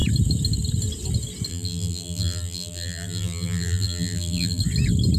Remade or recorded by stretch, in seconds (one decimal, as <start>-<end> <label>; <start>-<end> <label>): 0.0-1.5 recorded; 1.5-4.6 remade; 4.6-5.2 recorded